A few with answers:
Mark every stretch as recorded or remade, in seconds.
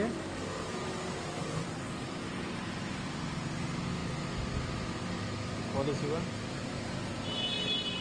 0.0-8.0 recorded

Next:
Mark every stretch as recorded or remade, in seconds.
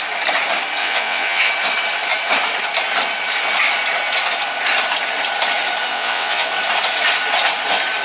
0.0-0.8 recorded; 0.8-1.5 remade; 1.5-5.9 recorded; 5.9-6.5 remade; 6.5-8.0 recorded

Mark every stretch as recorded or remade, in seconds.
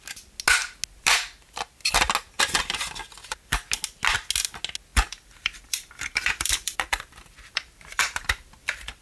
0.0-4.9 recorded; 4.9-9.0 remade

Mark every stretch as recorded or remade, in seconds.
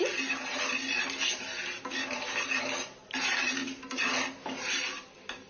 0.0-5.5 recorded